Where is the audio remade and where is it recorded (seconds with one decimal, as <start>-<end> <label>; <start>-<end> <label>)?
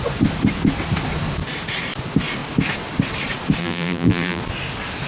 0.0-3.6 recorded; 3.6-4.4 remade; 4.4-5.1 recorded